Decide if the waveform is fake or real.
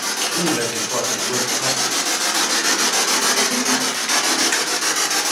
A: real